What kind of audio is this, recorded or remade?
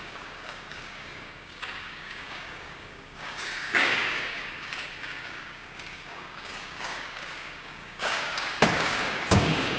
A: remade